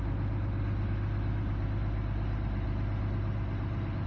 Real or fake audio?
real